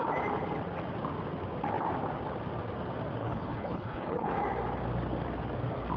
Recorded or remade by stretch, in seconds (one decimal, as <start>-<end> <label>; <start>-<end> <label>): 0.0-3.2 recorded; 3.2-4.3 remade; 4.3-6.0 recorded